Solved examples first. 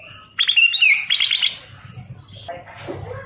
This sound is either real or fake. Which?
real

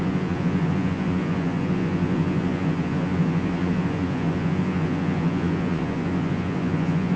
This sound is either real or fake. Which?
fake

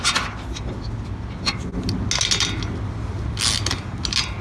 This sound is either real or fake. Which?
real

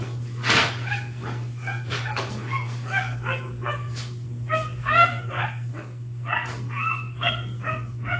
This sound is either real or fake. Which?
fake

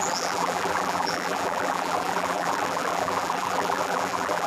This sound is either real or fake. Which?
fake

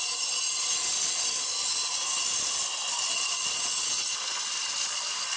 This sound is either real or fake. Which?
real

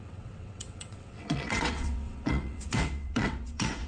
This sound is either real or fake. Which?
fake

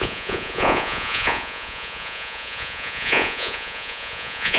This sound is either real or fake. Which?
fake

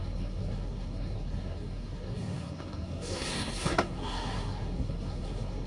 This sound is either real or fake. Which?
fake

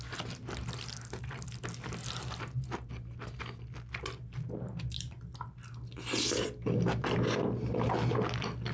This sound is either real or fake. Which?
real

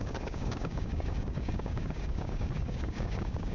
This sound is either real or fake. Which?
fake